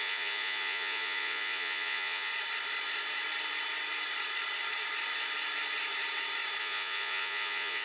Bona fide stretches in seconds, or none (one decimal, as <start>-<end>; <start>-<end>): 2.3-6.6

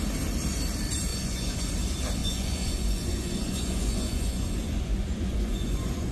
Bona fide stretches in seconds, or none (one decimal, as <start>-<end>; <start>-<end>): 0.0-1.1; 1.7-2.2